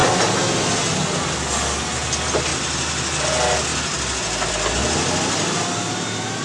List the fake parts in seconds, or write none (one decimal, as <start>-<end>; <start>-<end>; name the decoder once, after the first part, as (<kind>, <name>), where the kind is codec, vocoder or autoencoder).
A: none